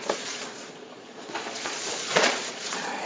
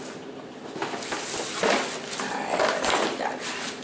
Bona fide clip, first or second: second